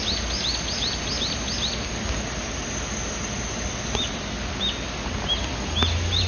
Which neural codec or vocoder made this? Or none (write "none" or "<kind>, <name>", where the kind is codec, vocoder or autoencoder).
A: none